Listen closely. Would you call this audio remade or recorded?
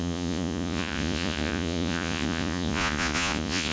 remade